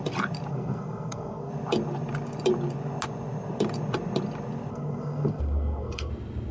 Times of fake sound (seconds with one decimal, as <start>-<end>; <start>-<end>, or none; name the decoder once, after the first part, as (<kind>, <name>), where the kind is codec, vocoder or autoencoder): 0.5-1.5 (codec, SNAC); 4.7-6.1